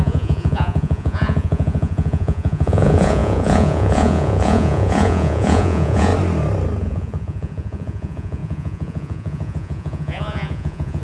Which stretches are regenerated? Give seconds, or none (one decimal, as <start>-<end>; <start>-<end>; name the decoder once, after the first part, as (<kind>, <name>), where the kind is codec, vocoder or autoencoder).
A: 0.0-6.1 (vocoder, Vocos); 6.8-11.0